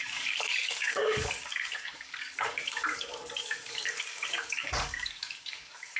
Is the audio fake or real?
fake